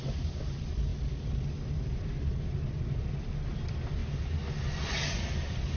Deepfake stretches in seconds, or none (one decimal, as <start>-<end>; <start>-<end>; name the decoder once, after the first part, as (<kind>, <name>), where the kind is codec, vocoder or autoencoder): none